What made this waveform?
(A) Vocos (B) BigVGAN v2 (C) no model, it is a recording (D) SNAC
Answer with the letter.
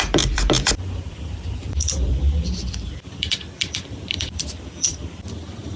B